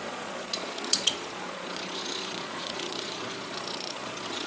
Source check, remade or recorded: remade